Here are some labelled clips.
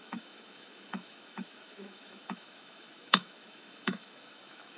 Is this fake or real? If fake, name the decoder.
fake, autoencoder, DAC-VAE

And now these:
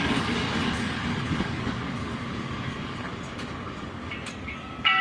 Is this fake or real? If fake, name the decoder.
fake, codec, DAC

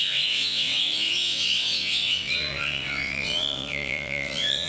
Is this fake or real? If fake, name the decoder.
fake, vocoder, WaveNeXt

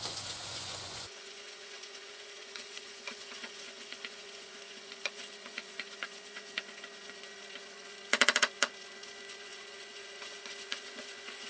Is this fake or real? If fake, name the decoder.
fake, vocoder, Vocos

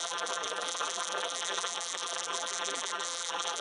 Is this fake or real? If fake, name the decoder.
fake, vocoder, BigVGAN v2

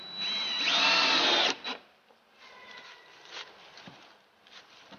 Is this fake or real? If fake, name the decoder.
real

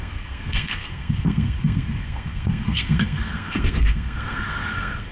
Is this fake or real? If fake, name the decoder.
fake, codec, SNAC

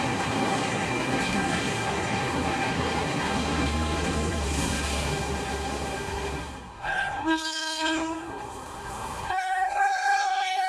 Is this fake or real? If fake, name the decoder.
fake, codec, SNAC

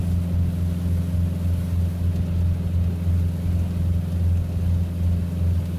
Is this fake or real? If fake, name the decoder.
real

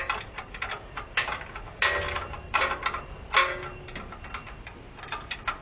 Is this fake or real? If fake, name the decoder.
real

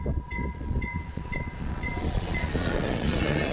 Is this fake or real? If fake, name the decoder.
fake, vocoder, Vocos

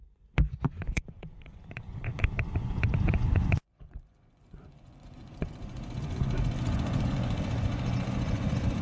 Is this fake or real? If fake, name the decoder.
fake, vocoder, Vocos